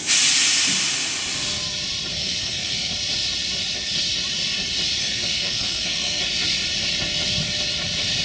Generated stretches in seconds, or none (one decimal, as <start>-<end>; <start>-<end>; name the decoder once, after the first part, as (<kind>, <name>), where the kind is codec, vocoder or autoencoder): 2.1-2.9 (codec, SNAC); 5.0-6.2